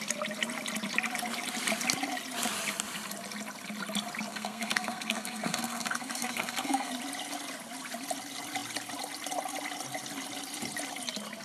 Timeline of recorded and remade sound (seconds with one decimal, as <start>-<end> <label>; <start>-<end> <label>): 0.0-4.3 recorded; 4.3-6.9 remade; 6.9-11.4 recorded